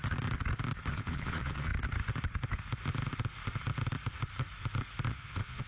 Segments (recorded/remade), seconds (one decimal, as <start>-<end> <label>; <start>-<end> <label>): 0.0-0.9 recorded; 0.9-1.7 remade; 1.7-5.1 recorded; 5.1-5.7 remade